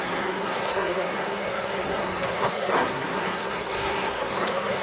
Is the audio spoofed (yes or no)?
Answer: yes